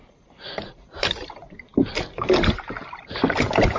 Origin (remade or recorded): remade